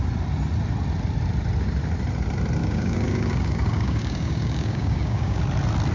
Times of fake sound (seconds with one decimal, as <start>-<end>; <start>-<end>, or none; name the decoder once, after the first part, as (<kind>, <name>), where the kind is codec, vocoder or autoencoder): 2.6-5.4 (codec, DAC)